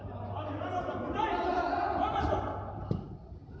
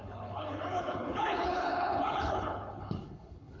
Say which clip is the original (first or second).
first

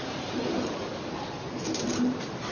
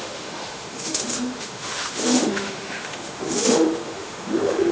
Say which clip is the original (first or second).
first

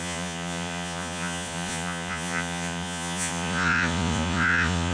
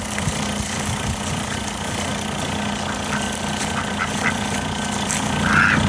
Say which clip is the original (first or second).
second